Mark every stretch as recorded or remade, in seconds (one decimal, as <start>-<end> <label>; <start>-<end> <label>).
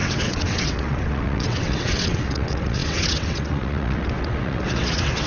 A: 0.0-5.3 remade